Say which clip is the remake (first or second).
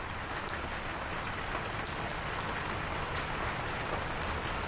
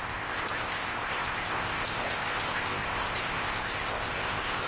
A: second